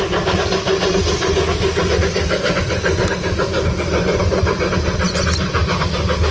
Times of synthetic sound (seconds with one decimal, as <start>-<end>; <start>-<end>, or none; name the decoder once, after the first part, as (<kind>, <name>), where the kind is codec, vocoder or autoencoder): none